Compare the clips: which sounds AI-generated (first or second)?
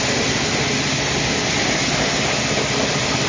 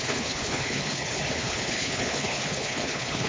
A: second